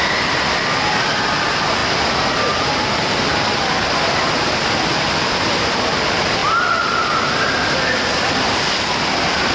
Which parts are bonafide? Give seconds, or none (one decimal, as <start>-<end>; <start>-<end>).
0.0-9.5